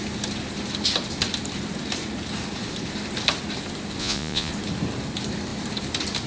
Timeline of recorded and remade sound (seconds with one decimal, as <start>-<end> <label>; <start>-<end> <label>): 0.0-4.0 recorded; 4.0-4.5 remade; 4.5-6.3 recorded